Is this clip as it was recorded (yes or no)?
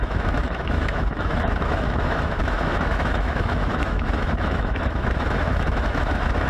no